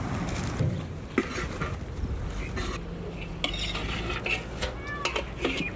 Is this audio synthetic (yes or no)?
no